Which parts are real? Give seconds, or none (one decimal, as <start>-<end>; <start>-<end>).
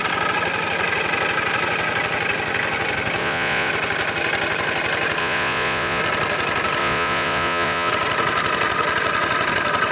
0.0-3.2; 3.7-5.2; 6.0-6.8; 7.9-9.9